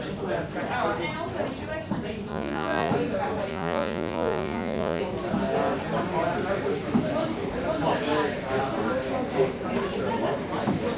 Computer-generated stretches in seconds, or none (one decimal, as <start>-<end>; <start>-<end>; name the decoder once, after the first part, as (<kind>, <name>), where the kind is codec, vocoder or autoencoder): 2.3-2.9 (vocoder, Vocos); 3.5-5.0